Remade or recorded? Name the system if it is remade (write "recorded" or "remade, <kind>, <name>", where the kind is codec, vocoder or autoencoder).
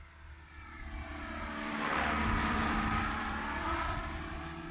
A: remade, vocoder, BigVGAN v2